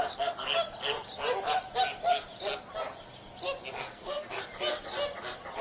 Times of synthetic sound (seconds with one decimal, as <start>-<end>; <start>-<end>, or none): 3.8-4.4